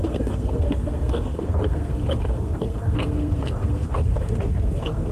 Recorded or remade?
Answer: remade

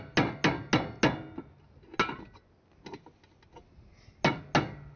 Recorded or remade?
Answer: recorded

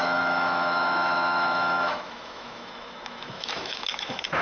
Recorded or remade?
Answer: remade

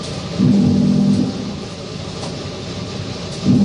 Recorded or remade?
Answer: recorded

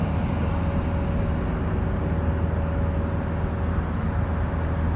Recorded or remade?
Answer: recorded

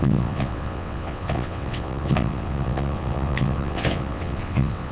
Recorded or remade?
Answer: remade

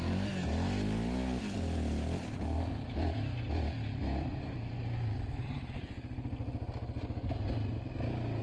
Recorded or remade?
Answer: recorded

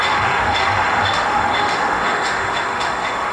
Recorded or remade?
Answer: remade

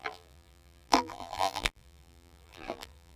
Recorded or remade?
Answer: remade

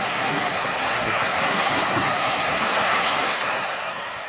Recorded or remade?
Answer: remade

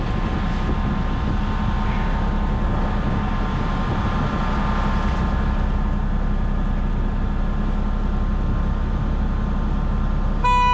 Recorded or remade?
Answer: recorded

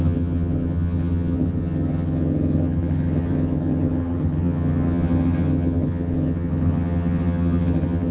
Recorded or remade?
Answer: remade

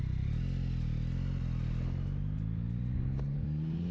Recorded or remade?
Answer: recorded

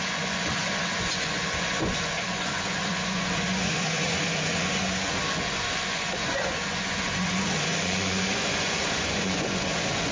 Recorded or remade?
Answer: remade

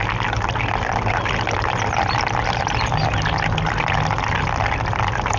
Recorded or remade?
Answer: recorded